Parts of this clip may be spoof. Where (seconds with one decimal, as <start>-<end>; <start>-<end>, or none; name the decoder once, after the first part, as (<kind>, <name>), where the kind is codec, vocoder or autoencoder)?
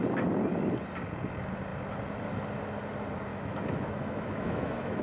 3.3-5.0 (autoencoder, DAC-VAE)